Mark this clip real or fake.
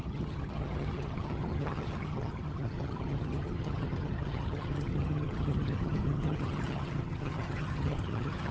fake